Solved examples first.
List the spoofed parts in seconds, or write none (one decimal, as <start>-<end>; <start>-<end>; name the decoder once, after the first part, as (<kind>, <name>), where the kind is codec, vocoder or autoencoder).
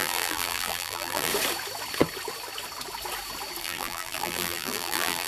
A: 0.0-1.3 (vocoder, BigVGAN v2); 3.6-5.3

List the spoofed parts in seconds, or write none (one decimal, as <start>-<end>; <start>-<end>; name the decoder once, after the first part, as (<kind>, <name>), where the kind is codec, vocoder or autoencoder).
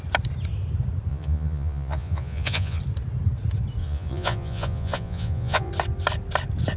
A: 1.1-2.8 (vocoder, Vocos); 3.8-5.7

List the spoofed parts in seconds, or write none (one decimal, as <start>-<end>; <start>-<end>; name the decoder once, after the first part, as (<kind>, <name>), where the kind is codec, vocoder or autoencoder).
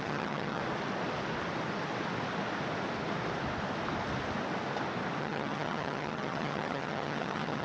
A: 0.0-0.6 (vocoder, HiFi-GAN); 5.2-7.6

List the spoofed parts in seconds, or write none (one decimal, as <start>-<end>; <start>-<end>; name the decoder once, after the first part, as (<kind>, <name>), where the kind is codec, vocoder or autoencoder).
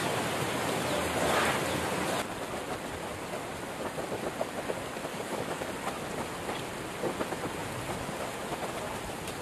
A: 5.1-5.7 (codec, DAC)